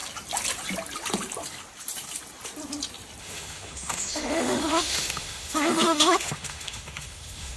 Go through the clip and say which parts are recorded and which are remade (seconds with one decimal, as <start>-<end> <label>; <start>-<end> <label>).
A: 0.0-3.2 recorded; 3.2-7.6 remade